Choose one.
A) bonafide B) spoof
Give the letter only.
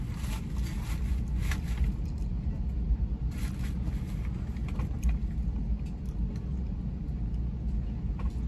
A